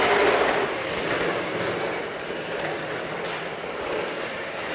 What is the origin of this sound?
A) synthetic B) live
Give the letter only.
B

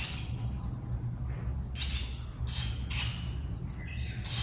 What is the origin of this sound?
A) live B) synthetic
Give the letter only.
A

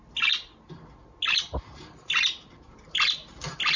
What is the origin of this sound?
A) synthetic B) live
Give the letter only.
B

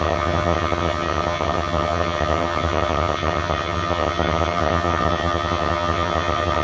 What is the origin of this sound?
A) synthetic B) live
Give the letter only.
A